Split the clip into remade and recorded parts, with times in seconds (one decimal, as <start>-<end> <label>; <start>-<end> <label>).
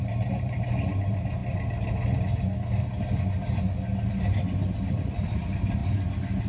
0.0-1.4 remade; 1.4-4.1 recorded; 4.1-5.8 remade; 5.8-6.5 recorded